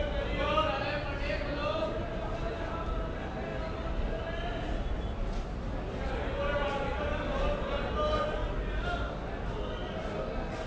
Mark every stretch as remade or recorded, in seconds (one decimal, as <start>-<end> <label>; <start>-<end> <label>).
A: 0.0-10.7 recorded